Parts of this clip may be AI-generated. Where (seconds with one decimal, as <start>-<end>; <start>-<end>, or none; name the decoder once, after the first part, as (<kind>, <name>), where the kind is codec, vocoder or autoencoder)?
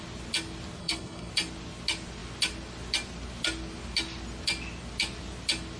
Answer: 0.8-1.3 (codec, SNAC)